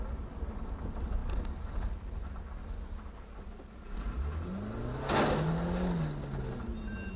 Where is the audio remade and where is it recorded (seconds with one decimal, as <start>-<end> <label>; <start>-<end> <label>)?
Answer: 0.0-7.2 recorded